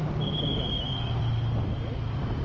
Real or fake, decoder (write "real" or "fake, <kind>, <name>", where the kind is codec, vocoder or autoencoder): real